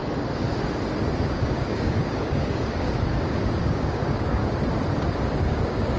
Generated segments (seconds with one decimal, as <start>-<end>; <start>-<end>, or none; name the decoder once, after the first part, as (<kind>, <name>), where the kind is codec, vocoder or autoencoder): 1.3-4.4 (codec, DAC); 5.1-6.0